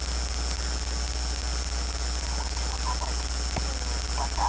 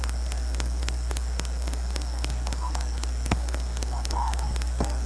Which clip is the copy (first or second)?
second